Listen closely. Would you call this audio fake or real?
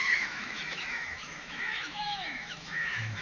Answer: fake